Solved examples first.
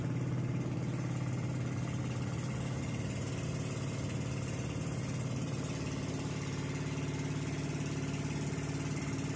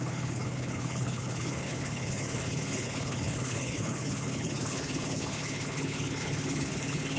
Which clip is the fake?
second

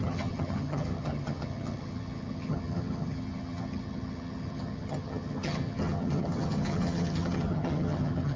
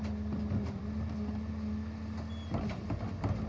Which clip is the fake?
first